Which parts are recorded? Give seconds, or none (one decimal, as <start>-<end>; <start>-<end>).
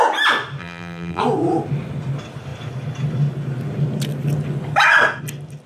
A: 0.0-0.6; 1.2-5.7